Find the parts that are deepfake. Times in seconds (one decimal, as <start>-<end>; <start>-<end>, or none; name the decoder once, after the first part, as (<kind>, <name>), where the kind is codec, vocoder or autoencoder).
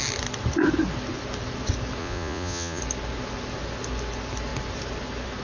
2.0-2.8 (vocoder, Vocos)